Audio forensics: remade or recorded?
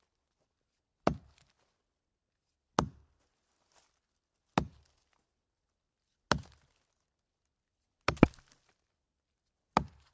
recorded